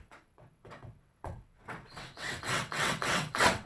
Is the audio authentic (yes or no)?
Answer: no